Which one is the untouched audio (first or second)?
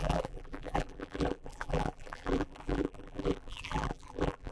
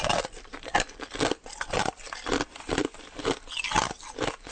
second